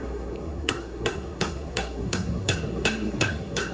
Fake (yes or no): yes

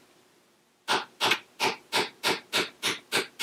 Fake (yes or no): yes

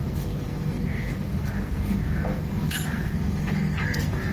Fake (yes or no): yes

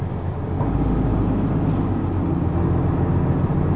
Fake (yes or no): no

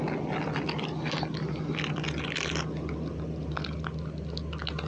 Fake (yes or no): no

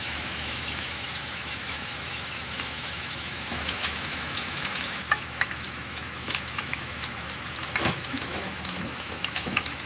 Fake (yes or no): yes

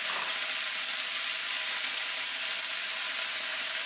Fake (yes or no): no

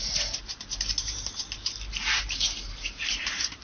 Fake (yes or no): yes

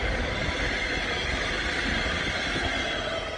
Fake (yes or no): no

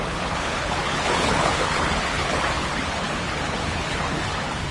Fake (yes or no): yes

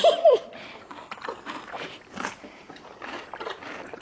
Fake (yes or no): no